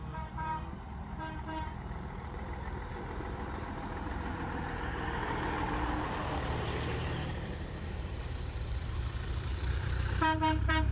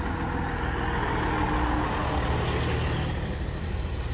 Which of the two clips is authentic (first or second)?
second